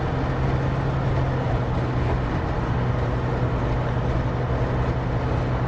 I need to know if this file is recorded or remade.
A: recorded